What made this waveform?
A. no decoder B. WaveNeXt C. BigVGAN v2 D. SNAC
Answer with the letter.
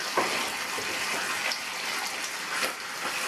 A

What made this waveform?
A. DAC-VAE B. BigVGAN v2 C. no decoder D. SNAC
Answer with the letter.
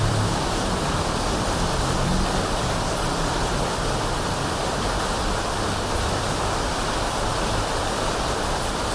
B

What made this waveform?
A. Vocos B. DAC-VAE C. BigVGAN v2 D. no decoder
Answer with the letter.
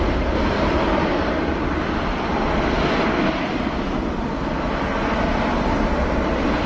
D